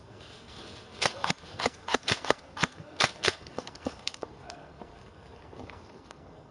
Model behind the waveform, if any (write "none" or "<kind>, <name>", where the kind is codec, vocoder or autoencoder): codec, SNAC